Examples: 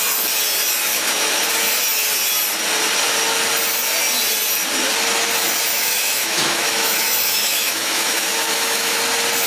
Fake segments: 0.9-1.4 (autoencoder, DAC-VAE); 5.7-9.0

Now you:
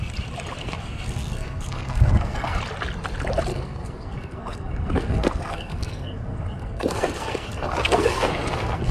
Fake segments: 0.6-2.6 (codec, SNAC); 3.5-8.9